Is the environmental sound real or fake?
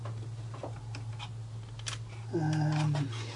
real